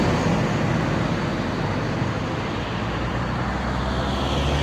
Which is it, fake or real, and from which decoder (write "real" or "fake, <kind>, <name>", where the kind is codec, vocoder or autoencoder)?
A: real